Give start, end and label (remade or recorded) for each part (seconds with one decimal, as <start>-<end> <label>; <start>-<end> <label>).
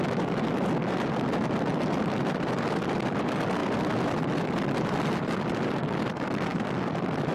0.0-3.6 recorded; 3.6-5.1 remade; 5.1-7.3 recorded